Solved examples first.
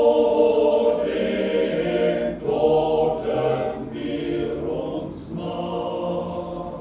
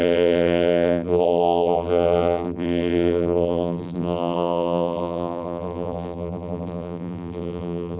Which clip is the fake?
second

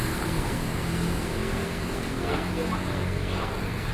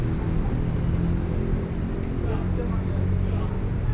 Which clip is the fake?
first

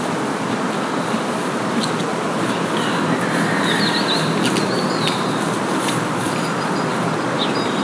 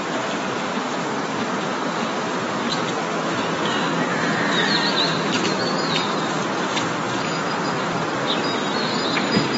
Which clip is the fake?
first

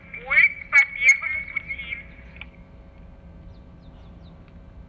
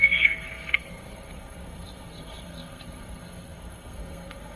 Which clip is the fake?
second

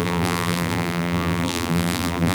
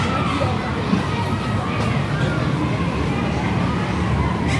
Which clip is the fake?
first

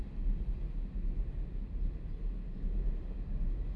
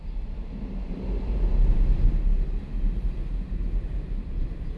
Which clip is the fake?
second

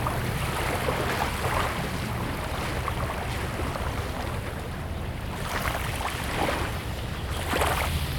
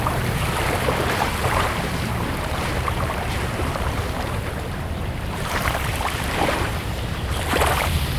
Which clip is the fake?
second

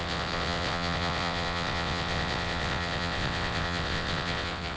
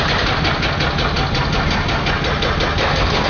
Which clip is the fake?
first